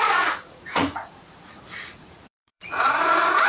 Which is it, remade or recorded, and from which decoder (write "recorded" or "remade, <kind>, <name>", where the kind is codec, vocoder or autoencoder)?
remade, vocoder, Vocos